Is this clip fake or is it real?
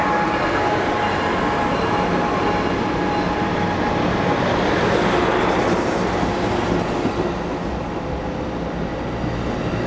real